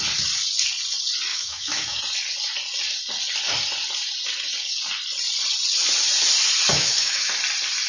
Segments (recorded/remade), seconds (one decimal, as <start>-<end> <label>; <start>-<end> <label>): 0.0-1.3 recorded; 1.3-2.0 remade; 2.0-6.7 recorded; 6.7-7.3 remade; 7.3-7.9 recorded